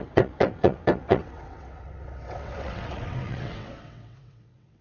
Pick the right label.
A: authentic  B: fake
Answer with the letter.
B